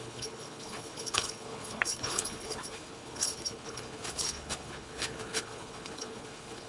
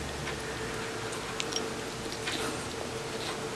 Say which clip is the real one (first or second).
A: second